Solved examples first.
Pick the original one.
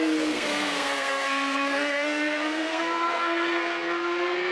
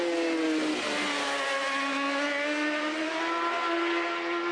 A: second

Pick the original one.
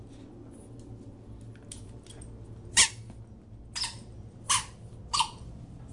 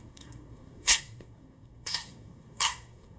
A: first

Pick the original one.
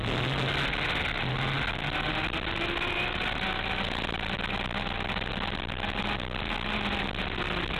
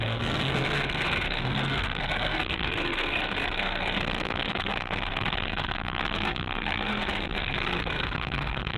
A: first